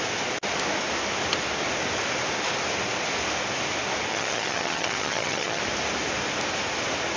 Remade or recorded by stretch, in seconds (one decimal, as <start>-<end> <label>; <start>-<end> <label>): 0.0-4.1 recorded; 4.1-5.6 remade; 5.6-7.2 recorded